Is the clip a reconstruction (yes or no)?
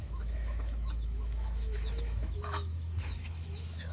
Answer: yes